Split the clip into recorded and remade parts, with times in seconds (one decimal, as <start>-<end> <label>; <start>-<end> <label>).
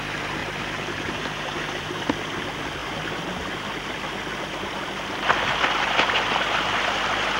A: 0.0-0.4 recorded; 0.4-1.6 remade; 1.6-2.8 recorded; 2.8-3.3 remade; 3.3-7.4 recorded